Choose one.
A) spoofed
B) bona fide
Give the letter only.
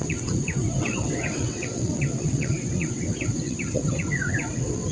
A